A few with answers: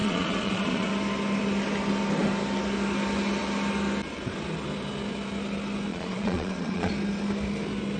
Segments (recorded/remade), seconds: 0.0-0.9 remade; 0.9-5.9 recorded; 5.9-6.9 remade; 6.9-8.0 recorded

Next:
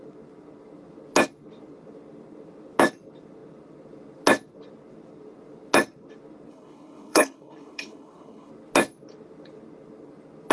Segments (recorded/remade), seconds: 0.0-6.5 recorded; 6.5-8.5 remade; 8.5-10.5 recorded

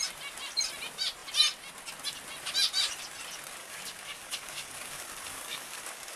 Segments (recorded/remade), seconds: 0.0-3.6 recorded; 3.6-6.2 remade